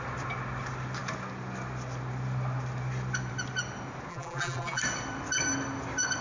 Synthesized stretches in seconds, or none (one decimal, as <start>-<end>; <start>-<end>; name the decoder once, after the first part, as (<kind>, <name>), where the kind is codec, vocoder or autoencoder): 4.1-4.8 (vocoder, BigVGAN v2)